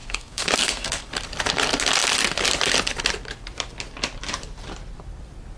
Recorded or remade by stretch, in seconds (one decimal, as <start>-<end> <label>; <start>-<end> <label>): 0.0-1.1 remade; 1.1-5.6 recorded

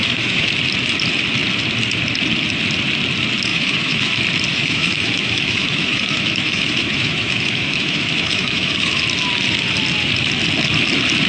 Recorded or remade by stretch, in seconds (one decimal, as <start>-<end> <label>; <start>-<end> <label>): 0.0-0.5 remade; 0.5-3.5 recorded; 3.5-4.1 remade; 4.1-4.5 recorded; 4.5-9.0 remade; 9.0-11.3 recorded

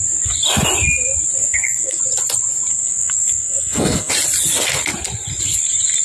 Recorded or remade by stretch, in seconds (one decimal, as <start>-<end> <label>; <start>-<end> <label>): 0.0-1.4 recorded; 1.4-2.0 remade; 2.0-2.7 recorded; 2.7-4.1 remade; 4.1-6.0 recorded

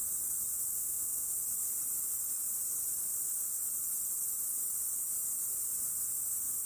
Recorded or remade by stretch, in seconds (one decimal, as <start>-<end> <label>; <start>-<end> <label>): 0.0-0.7 recorded; 0.7-1.3 remade; 1.3-6.7 recorded

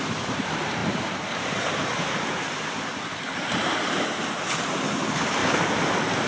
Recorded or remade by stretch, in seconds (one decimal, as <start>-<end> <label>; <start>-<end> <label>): 0.0-5.4 remade; 5.4-6.3 recorded

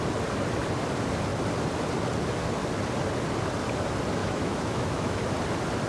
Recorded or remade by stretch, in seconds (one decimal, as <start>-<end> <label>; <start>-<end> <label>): 0.0-4.2 recorded; 4.2-5.2 remade; 5.2-5.9 recorded